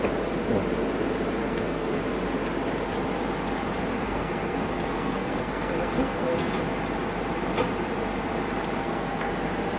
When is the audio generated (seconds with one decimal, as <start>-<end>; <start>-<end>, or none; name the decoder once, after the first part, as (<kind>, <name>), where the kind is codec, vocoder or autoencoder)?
1.4-2.0 (codec, SNAC); 4.0-6.5; 8.8-9.3